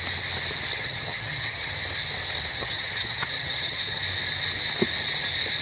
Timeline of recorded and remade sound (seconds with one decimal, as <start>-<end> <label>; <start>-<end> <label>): 0.0-0.7 recorded; 0.7-1.7 remade; 1.7-2.5 recorded; 2.5-4.0 remade; 4.0-5.6 recorded